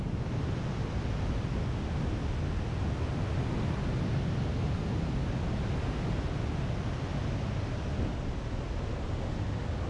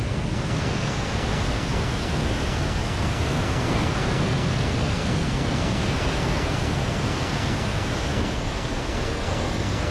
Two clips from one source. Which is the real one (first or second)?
first